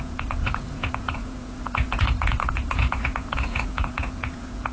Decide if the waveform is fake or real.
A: fake